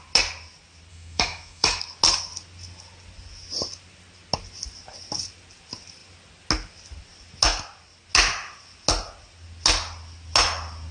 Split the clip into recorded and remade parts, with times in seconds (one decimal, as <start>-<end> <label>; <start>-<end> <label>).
0.0-0.9 recorded; 0.9-1.8 remade; 1.8-10.9 recorded